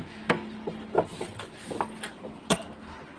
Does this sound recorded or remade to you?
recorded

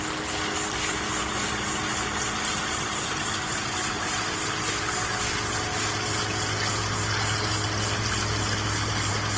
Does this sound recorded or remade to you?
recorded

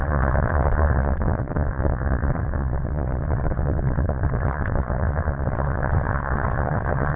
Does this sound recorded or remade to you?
remade